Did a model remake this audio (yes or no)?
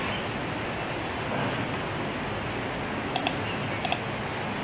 no